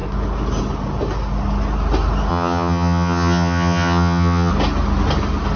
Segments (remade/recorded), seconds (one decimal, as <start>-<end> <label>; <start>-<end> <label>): 0.0-2.3 recorded; 2.3-4.5 remade; 4.5-5.6 recorded

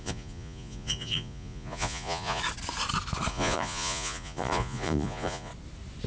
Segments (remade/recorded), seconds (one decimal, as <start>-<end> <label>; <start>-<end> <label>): 0.0-2.4 remade; 2.4-3.3 recorded; 3.3-5.5 remade; 5.5-6.1 recorded

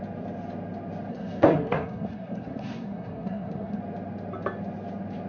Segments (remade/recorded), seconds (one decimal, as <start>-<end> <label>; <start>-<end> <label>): 0.0-1.1 recorded; 1.1-3.8 remade; 3.8-5.3 recorded

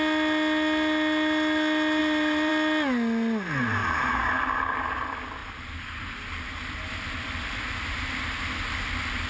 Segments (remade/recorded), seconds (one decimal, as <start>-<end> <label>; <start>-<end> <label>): 0.0-2.0 recorded; 2.0-2.5 remade; 2.5-3.8 recorded; 3.8-4.3 remade; 4.3-5.4 recorded; 5.4-6.5 remade; 6.5-9.3 recorded

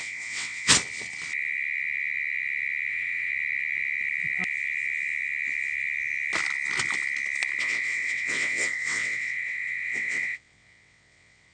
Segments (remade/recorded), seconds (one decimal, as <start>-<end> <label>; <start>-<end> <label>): 0.0-0.7 remade; 0.7-2.9 recorded; 2.9-3.3 remade; 3.3-7.6 recorded; 7.6-11.5 remade

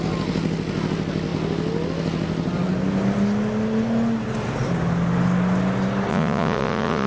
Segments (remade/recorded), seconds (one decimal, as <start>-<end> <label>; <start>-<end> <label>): 0.0-6.1 recorded; 6.1-7.1 remade

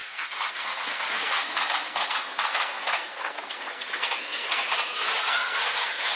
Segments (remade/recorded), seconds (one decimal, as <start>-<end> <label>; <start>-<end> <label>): 0.0-6.2 remade